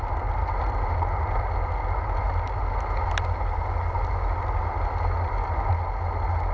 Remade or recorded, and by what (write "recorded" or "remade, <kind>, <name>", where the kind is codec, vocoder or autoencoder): recorded